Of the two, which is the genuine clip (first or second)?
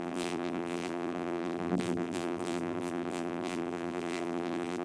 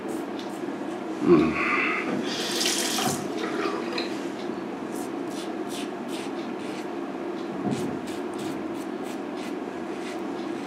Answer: second